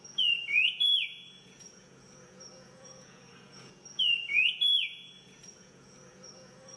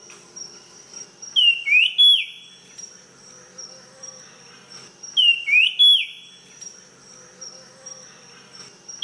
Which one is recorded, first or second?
second